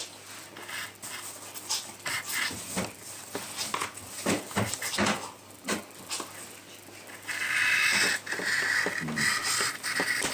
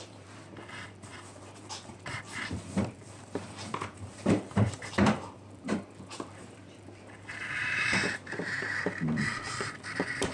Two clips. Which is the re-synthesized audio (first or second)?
second